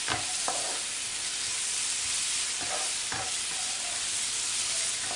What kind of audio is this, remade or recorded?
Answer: recorded